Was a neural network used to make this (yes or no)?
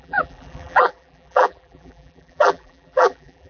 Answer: yes